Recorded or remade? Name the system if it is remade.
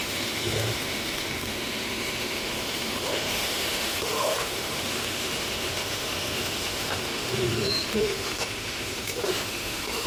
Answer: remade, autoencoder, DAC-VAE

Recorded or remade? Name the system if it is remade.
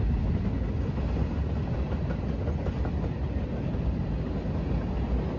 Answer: recorded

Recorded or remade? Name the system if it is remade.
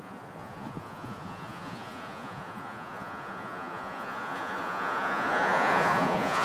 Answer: remade, vocoder, Vocos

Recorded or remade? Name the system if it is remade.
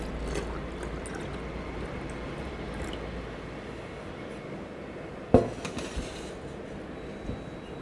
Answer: recorded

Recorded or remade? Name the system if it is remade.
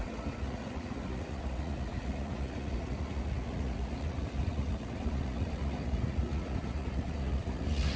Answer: remade, vocoder, Vocos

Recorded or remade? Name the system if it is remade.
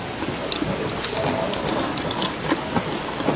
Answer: recorded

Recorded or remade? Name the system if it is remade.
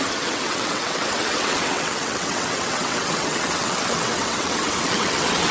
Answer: remade, vocoder, WaveNeXt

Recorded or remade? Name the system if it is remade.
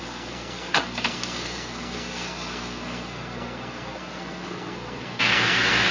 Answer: remade, codec, SNAC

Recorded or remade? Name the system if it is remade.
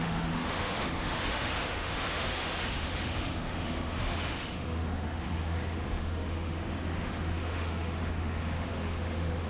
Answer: remade, autoencoder, DAC-VAE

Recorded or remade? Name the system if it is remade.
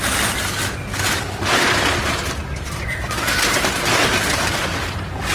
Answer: recorded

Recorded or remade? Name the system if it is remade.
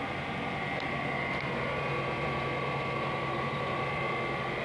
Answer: recorded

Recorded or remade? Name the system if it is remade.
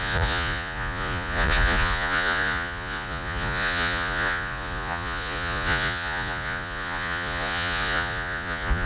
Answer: remade, vocoder, Vocos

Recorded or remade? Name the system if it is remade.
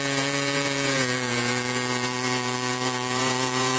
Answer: remade, vocoder, Vocos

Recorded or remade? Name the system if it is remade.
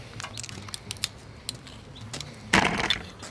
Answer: recorded